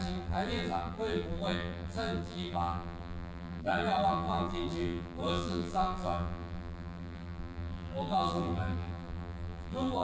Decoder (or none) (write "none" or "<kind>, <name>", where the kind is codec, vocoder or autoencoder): vocoder, BigVGAN v2